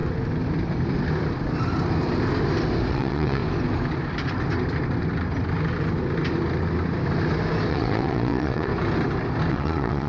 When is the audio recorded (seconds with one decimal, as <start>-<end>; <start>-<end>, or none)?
0.0-2.9; 3.4-7.7; 8.7-9.5